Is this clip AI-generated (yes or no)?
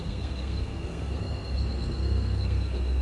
yes